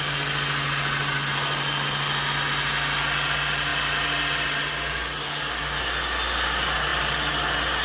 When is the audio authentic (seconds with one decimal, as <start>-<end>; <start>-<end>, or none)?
0.0-7.8